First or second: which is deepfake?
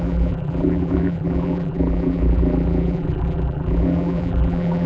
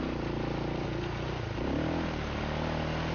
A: first